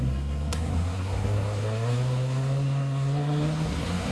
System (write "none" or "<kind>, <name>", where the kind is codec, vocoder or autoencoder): codec, SNAC